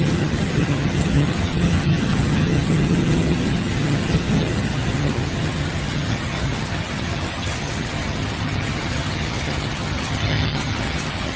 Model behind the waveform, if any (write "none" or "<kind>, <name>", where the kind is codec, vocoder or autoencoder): vocoder, HiFi-GAN